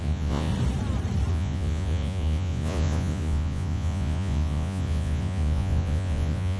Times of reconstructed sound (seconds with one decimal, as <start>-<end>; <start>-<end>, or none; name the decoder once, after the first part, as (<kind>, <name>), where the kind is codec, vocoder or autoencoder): 0.0-0.5 (vocoder, Vocos); 1.3-6.6